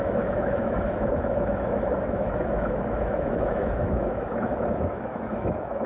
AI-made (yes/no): yes